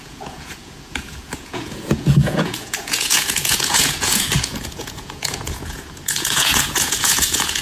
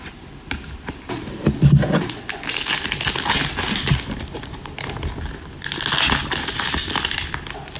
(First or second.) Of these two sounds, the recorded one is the second